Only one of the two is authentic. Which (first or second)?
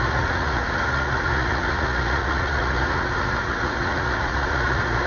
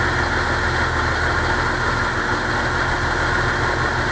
second